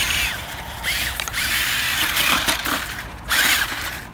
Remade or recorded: remade